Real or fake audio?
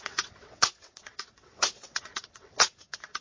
fake